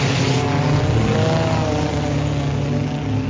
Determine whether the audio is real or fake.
real